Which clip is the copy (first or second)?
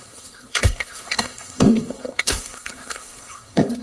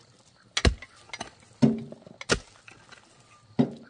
first